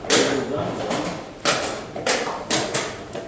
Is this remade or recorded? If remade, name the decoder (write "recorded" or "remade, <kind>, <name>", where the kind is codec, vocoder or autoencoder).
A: recorded